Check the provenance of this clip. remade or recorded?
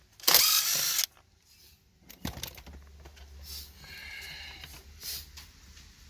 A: recorded